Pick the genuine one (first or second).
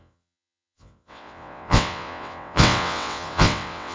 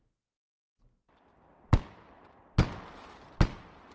second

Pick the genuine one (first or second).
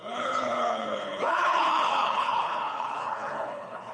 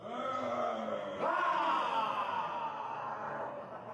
second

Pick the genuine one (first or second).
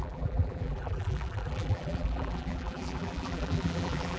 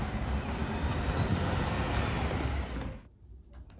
second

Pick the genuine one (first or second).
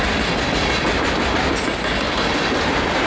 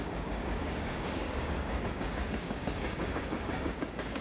first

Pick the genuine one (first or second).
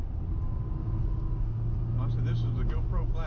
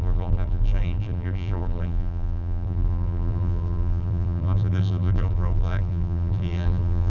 first